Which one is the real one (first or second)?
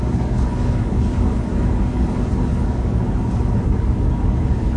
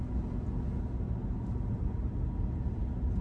second